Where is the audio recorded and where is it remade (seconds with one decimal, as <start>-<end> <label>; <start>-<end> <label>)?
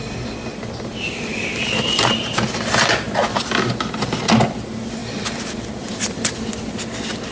0.0-0.7 remade; 0.7-5.0 recorded; 5.0-6.8 remade; 6.8-7.3 recorded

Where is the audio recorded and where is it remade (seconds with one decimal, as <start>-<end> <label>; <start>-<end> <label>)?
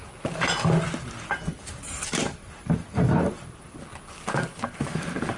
0.0-1.2 recorded; 1.2-3.9 remade; 3.9-4.6 recorded; 4.6-5.4 remade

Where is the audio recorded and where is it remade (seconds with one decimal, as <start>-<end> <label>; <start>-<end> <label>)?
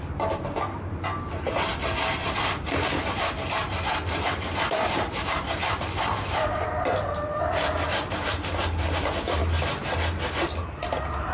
0.0-9.4 remade; 9.4-10.8 recorded; 10.8-11.3 remade